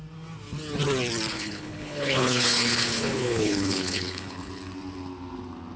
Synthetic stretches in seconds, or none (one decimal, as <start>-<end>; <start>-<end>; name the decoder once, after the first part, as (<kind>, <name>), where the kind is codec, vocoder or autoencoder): 1.3-4.5 (codec, HILCodec)